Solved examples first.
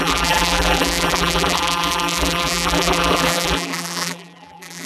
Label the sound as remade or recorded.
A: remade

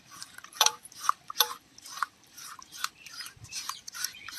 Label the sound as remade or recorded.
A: remade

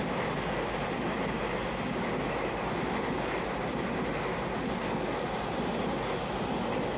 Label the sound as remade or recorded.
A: recorded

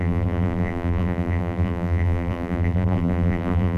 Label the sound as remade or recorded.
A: remade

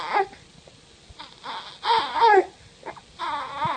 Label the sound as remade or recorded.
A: recorded